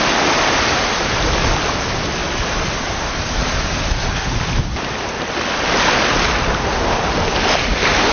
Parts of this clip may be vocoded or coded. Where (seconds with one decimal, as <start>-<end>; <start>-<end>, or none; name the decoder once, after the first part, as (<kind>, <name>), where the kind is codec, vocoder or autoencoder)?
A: none